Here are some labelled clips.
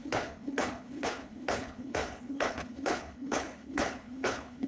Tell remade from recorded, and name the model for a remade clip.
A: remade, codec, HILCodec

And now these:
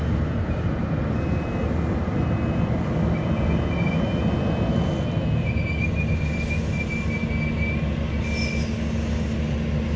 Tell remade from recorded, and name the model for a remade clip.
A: recorded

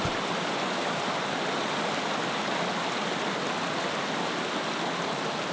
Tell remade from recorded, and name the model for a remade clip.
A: recorded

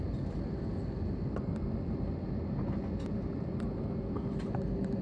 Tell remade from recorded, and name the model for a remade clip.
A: recorded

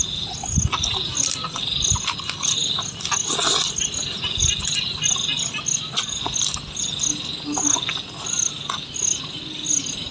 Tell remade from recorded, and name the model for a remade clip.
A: recorded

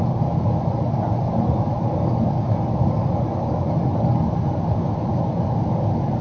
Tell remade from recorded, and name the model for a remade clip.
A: recorded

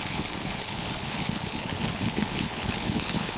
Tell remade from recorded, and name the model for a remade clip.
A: remade, codec, HILCodec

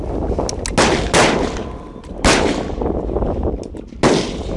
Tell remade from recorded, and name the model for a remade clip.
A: recorded